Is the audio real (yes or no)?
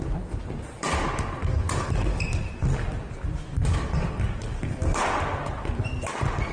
yes